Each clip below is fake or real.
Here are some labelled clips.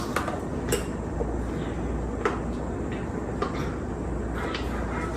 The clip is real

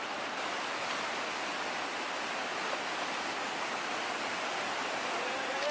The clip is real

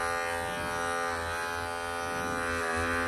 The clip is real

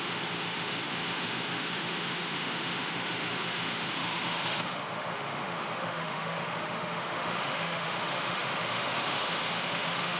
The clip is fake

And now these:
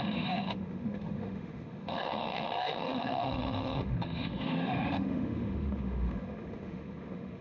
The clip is fake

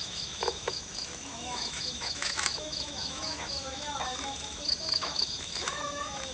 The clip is fake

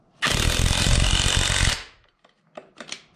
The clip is real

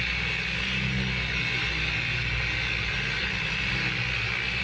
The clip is real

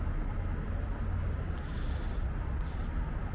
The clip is real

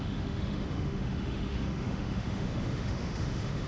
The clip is fake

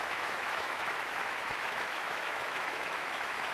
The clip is fake